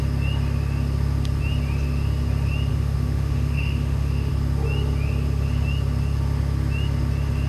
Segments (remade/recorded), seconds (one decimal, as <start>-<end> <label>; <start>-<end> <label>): 0.0-2.7 recorded; 2.7-4.3 remade; 4.3-7.5 recorded